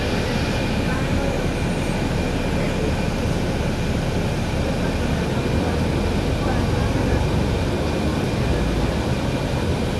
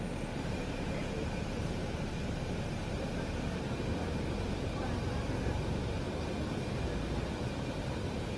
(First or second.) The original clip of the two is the first